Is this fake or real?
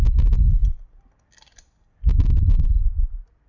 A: real